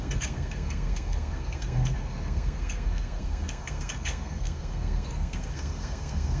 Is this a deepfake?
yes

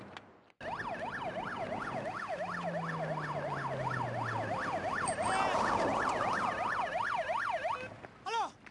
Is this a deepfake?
no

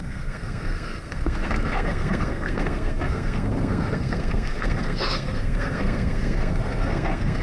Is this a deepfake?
yes